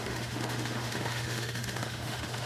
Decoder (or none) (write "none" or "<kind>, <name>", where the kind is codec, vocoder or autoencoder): autoencoder, DAC-VAE